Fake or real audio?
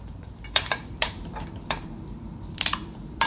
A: fake